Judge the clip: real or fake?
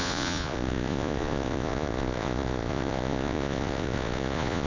fake